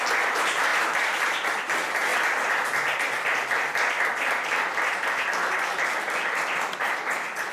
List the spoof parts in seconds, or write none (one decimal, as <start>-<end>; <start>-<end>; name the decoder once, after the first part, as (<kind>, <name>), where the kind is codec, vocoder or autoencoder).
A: 0.0-0.7 (vocoder, BigVGAN v2); 1.5-2.1; 3.5-7.5